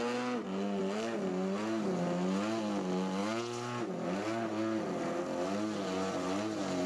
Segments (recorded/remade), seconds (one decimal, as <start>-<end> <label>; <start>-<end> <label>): 0.0-6.9 recorded